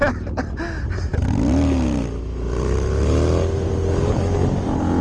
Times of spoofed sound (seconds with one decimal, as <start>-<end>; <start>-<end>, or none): none